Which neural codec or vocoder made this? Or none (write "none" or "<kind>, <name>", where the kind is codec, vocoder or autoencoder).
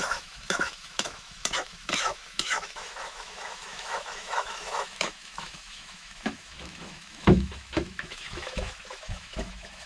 autoencoder, DAC-VAE